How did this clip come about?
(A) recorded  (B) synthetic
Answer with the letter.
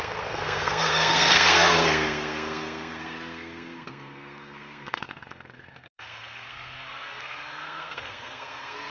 B